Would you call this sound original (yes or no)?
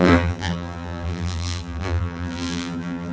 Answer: no